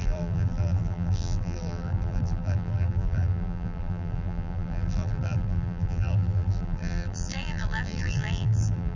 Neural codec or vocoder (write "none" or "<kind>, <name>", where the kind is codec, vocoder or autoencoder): vocoder, BigVGAN v2